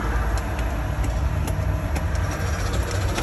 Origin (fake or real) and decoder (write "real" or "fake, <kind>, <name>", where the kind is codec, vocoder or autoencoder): real